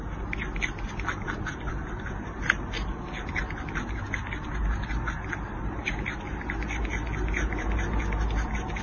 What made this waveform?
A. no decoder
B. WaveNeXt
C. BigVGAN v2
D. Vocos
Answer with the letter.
A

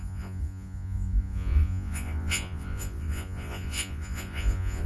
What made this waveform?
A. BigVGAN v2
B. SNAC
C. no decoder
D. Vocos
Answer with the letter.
D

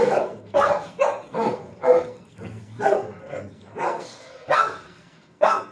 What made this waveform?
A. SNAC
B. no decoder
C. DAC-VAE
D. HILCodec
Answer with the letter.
A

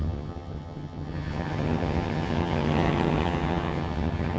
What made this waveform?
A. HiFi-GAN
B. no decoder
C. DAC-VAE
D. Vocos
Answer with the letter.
A